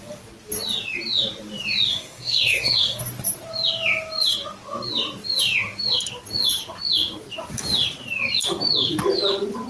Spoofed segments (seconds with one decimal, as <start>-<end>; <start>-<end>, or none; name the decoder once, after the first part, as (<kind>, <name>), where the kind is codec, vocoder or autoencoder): 1.9-3.0 (codec, SNAC)